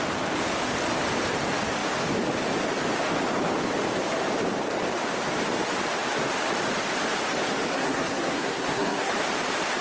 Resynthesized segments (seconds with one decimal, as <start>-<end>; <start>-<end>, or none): 7.7-9.1